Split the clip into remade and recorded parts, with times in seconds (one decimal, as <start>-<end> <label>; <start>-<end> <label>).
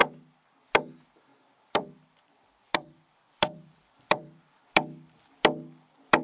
0.0-1.3 recorded; 1.3-4.6 remade; 4.6-6.2 recorded